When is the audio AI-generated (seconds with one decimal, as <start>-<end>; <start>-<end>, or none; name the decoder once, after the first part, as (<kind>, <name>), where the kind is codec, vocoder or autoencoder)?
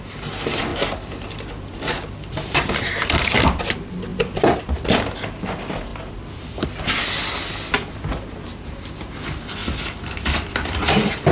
0.7-3.6 (vocoder, BigVGAN v2); 4.1-4.6; 5.9-6.6; 9.6-10.9